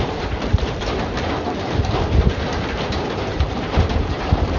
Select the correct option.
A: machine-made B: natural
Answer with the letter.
A